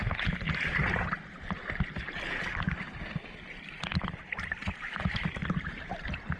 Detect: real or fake real